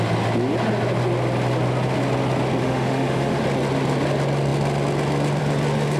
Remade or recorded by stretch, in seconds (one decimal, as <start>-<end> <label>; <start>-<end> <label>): 0.0-2.6 recorded; 2.6-3.4 remade; 3.4-6.0 recorded